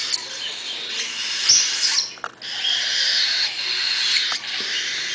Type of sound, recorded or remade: recorded